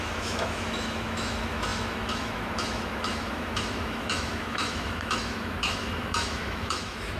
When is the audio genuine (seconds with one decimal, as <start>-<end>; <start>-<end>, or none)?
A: none